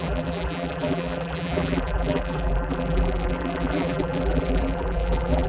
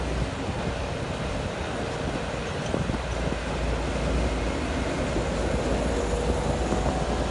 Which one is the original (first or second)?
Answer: second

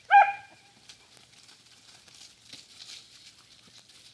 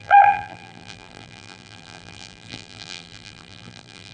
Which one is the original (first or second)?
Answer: first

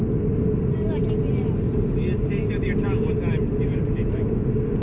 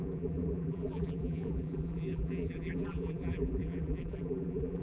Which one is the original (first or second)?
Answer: first